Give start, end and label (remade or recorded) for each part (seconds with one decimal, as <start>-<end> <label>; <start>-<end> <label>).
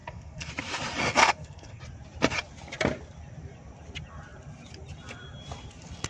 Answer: 0.0-0.5 remade; 0.5-1.2 recorded; 1.2-1.8 remade; 1.8-6.1 recorded